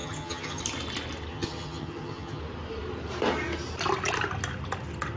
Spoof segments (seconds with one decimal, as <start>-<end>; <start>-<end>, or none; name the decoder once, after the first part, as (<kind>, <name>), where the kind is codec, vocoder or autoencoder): 0.0-0.6 (vocoder, HiFi-GAN); 1.3-2.4